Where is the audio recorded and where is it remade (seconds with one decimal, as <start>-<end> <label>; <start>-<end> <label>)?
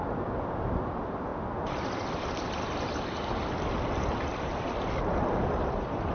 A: 0.0-6.1 recorded